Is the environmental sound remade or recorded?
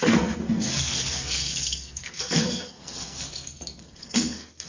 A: remade